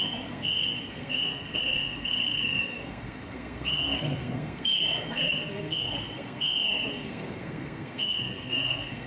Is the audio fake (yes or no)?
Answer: yes